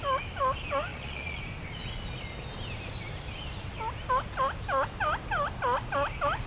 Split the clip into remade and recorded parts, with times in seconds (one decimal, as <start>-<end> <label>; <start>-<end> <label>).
0.0-0.9 recorded; 0.9-1.4 remade; 1.4-6.5 recorded